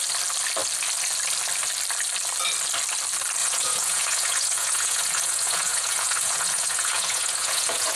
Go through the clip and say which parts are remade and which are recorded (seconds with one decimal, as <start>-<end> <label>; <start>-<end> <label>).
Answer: 0.0-3.4 recorded; 3.4-8.0 remade

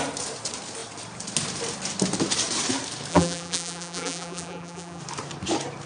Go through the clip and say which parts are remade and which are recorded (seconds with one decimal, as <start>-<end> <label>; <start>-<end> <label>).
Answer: 0.0-3.1 recorded; 3.1-5.0 remade; 5.0-5.9 recorded

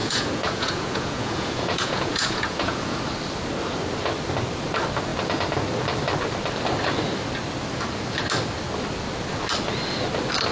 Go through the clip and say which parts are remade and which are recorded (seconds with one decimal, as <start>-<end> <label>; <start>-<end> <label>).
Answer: 0.0-3.0 remade; 3.0-10.5 recorded

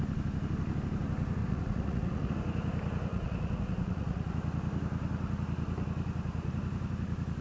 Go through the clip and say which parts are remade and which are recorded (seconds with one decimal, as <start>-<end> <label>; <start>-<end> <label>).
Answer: 0.0-1.4 recorded; 1.4-2.3 remade; 2.3-3.1 recorded; 3.1-4.3 remade; 4.3-7.4 recorded

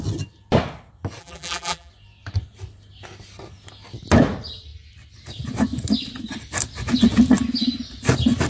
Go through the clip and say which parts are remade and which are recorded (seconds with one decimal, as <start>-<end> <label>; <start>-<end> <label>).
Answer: 0.0-1.2 recorded; 1.2-1.9 remade; 1.9-8.5 recorded

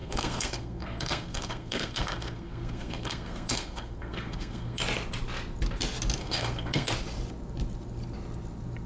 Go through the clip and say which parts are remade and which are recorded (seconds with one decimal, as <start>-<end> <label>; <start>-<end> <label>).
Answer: 0.0-4.8 remade; 4.8-6.2 recorded; 6.2-6.9 remade; 6.9-8.9 recorded

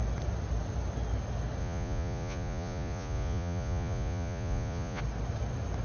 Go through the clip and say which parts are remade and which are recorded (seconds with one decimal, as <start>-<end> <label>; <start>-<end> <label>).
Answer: 0.0-1.6 recorded; 1.6-5.0 remade; 5.0-5.8 recorded